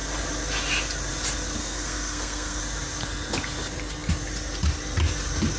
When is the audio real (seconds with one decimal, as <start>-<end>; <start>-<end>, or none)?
0.0-1.6; 2.6-5.6